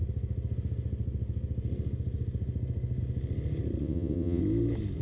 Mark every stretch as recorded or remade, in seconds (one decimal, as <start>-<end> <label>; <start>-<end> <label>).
0.0-3.8 recorded; 3.8-4.4 remade; 4.4-5.0 recorded